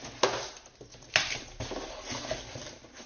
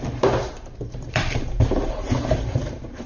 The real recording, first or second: first